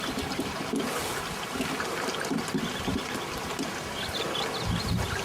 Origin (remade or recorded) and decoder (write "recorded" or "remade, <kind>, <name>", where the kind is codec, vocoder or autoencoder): recorded